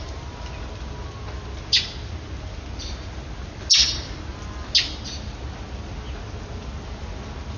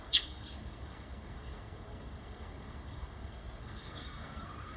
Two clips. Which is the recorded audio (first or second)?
first